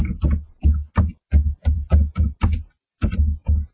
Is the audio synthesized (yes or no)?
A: no